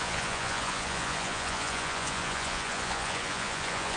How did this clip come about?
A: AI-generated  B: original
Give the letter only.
A